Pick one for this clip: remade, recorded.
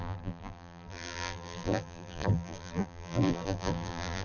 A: remade